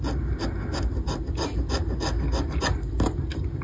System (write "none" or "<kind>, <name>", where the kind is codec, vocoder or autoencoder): none